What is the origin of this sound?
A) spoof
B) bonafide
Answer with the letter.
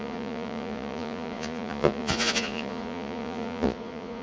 A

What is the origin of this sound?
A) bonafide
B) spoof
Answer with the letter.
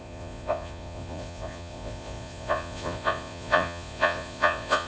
B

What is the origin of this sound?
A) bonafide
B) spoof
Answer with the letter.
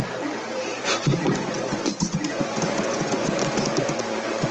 B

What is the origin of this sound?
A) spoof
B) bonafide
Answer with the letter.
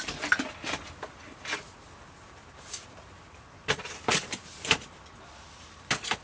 B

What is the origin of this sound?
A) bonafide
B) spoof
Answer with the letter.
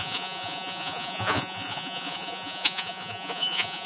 B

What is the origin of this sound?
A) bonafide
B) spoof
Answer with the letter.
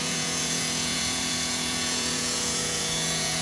B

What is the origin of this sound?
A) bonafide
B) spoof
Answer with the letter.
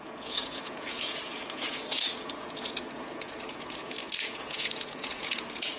B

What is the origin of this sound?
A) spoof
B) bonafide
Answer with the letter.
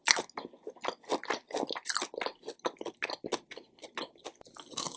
B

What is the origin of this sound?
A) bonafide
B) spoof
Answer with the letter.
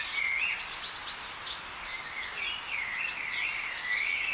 A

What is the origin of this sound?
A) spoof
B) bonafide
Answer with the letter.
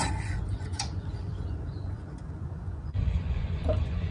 A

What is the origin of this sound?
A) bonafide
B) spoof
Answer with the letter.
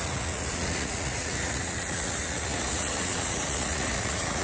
B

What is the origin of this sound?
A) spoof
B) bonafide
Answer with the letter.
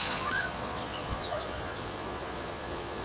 A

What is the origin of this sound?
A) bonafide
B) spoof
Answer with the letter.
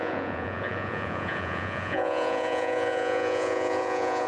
B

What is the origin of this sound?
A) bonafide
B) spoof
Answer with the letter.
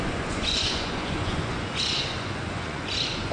B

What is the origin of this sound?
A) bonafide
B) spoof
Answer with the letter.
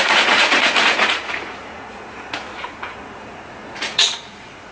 B